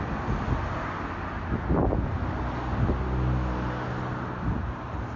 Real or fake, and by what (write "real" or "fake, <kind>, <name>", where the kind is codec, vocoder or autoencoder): real